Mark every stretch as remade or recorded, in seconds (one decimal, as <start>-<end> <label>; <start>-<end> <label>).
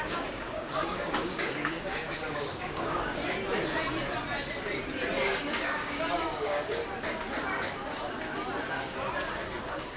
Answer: 0.0-3.2 remade; 3.2-5.2 recorded; 5.2-6.8 remade; 6.8-9.6 recorded; 9.6-10.0 remade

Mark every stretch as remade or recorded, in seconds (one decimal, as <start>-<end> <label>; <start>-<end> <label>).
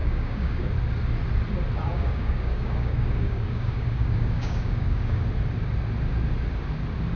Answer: 0.0-0.7 remade; 0.7-1.9 recorded; 1.9-5.2 remade; 5.2-7.2 recorded